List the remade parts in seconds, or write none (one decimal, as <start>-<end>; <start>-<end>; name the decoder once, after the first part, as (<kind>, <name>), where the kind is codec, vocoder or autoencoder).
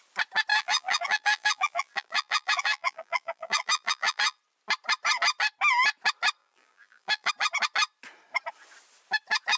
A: 0.5-4.4 (vocoder, BigVGAN v2); 6.4-7.3